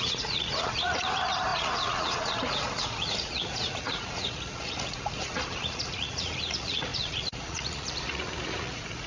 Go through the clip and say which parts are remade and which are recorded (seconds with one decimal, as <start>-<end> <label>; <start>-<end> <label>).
0.0-9.1 remade